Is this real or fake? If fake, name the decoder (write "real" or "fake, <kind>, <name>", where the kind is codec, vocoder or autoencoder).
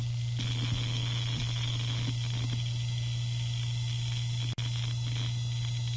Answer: real